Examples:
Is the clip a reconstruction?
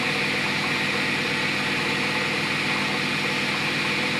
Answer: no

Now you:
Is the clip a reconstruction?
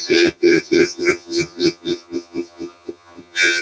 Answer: yes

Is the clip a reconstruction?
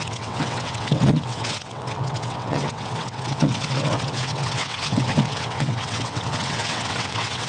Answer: yes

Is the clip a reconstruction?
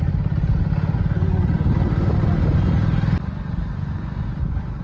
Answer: no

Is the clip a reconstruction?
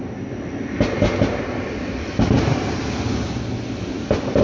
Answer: no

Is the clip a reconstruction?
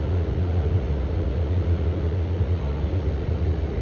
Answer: yes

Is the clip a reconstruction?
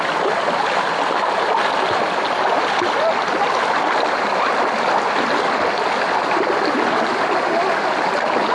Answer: no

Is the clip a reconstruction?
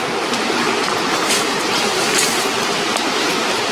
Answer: no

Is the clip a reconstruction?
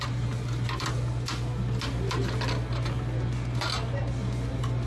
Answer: no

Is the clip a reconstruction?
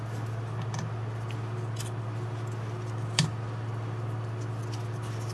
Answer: no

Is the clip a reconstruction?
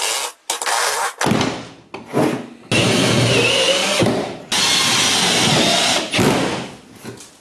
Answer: no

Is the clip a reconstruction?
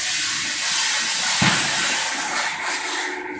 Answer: no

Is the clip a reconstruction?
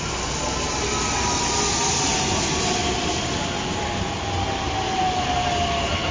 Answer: no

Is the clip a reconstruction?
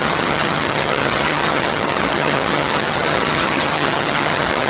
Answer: yes